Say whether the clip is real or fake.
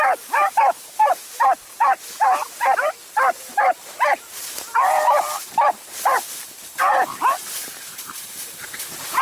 fake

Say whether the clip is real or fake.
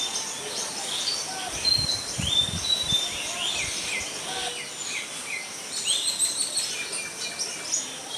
real